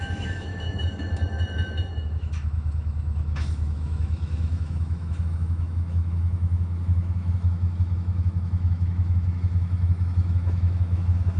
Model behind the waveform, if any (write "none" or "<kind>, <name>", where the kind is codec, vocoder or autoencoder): autoencoder, DAC-VAE